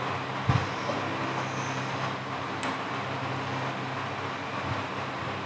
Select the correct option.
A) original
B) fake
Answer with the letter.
A